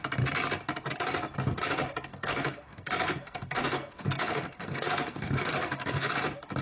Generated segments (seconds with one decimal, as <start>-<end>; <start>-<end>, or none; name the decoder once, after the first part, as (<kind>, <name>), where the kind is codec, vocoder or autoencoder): 2.1-6.1 (codec, SNAC)